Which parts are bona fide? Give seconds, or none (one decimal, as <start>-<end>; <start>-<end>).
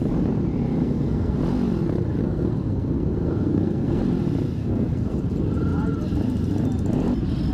0.0-0.8; 1.4-2.2; 4.0-4.6; 5.3-7.5